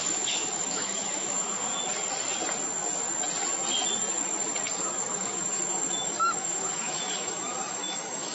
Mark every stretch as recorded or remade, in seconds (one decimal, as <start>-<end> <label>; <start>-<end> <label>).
0.0-1.7 remade; 1.7-4.8 recorded; 4.8-8.3 remade